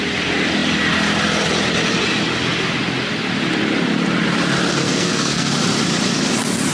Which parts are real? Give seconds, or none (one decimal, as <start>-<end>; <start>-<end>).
0.0-4.7; 5.5-6.7